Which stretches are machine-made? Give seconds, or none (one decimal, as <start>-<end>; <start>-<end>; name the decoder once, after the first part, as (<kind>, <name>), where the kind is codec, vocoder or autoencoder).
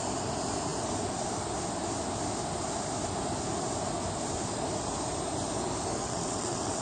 6.0-6.8 (vocoder, WaveNeXt)